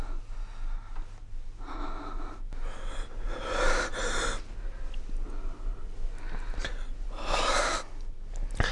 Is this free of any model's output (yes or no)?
yes